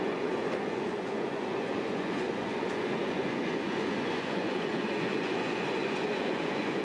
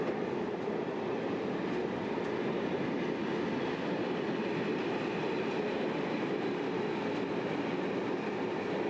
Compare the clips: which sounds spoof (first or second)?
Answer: first